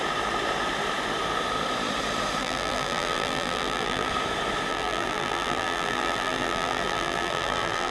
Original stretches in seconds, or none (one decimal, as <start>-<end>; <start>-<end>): 0.0-2.4; 4.1-4.7